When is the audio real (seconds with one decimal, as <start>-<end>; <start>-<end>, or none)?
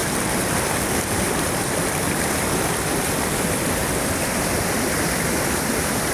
3.8-4.4